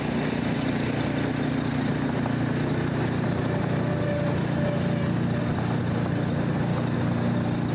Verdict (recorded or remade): recorded